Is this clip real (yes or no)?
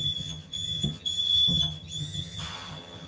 no